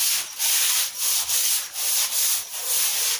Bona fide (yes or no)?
yes